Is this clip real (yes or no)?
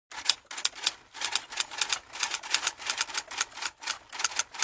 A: yes